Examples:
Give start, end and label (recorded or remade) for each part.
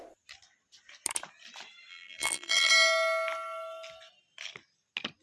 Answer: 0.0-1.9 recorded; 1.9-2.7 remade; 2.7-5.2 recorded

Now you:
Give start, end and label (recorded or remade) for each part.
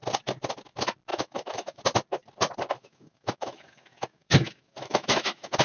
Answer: 0.0-1.1 recorded; 1.1-1.8 remade; 1.8-2.8 recorded; 2.8-5.6 remade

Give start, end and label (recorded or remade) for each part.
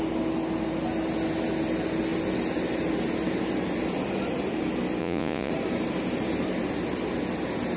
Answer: 0.0-5.0 recorded; 5.0-5.5 remade; 5.5-7.8 recorded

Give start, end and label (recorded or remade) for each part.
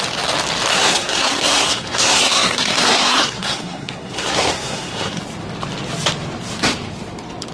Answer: 0.0-0.7 recorded; 0.7-5.2 remade; 5.2-7.5 recorded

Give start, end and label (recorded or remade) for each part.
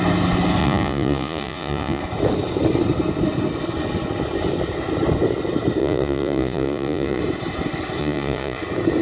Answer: 0.0-0.6 recorded; 0.6-2.0 remade; 2.0-5.8 recorded; 5.8-7.2 remade; 7.2-8.0 recorded; 8.0-8.6 remade; 8.6-9.0 recorded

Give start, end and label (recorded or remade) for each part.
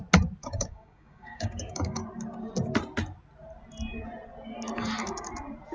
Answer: 0.0-0.4 recorded; 0.4-2.0 remade; 2.0-5.7 recorded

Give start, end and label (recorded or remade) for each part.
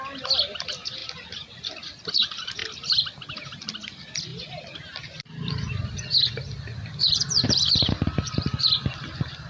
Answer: 0.0-2.6 remade; 2.6-3.3 recorded; 3.3-4.3 remade; 4.3-5.0 recorded; 5.0-9.5 remade